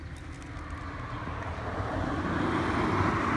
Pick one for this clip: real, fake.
real